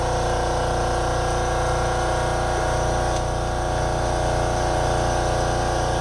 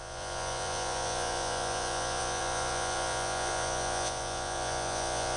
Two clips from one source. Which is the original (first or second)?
first